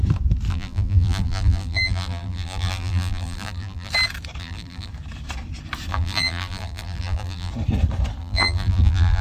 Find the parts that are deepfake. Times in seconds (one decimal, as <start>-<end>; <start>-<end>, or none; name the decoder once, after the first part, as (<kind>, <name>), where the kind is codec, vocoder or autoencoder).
0.5-3.9 (vocoder, BigVGAN v2); 4.4-4.9; 5.9-7.5; 8.2-9.2